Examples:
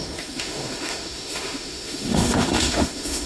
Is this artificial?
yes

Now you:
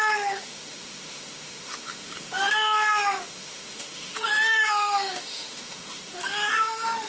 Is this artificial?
yes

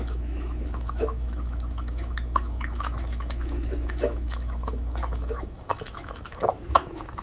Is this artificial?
yes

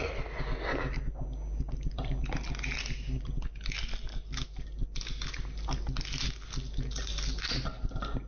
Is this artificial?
no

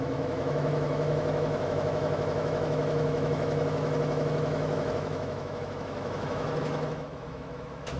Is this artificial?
yes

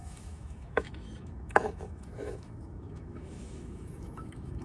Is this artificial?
yes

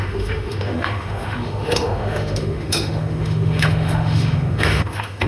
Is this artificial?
yes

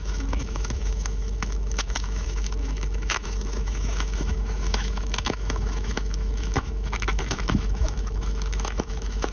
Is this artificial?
yes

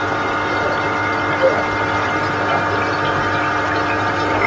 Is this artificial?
no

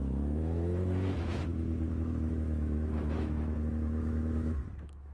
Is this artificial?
yes